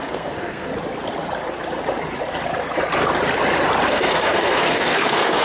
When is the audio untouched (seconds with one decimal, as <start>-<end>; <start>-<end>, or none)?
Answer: 0.7-3.9